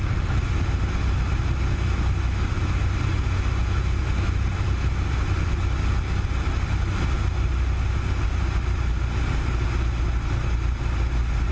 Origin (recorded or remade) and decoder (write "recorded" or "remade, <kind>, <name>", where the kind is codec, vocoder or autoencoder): recorded